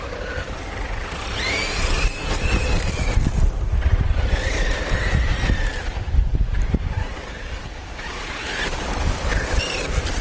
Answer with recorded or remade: recorded